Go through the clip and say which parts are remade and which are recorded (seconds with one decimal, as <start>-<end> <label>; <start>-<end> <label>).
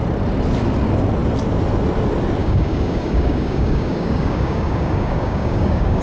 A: 0.0-2.4 recorded; 2.4-6.0 remade